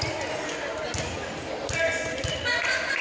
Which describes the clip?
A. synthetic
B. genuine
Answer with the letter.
B